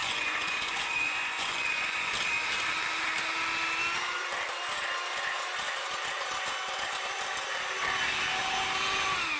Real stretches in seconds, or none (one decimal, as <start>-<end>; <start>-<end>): 2.1-9.4